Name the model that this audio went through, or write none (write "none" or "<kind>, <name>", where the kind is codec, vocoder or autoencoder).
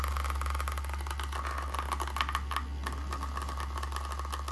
none